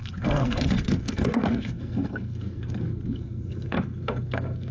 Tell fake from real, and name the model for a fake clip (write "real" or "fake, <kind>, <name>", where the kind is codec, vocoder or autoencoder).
fake, codec, SNAC